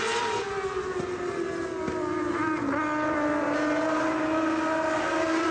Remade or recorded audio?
recorded